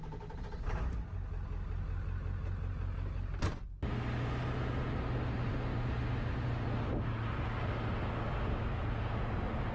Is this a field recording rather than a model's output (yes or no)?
yes